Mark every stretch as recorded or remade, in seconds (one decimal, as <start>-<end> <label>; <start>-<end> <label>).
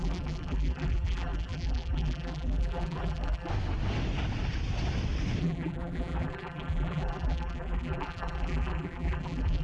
0.0-3.5 remade; 3.5-5.4 recorded; 5.4-9.6 remade